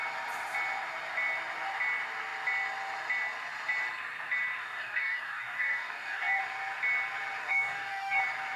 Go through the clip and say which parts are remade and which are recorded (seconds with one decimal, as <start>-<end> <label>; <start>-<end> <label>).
0.0-4.6 recorded; 4.6-6.4 remade; 6.4-7.4 recorded; 7.4-8.2 remade; 8.2-8.6 recorded